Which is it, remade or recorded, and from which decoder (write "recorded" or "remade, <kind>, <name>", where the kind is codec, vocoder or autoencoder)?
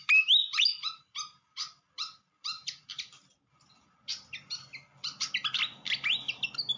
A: recorded